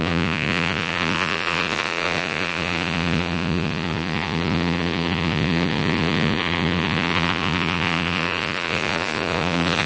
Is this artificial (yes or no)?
yes